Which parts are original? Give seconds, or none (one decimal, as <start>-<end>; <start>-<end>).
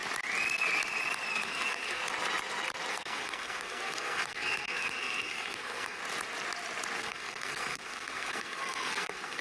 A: 0.0-1.3; 2.0-2.9; 6.0-7.0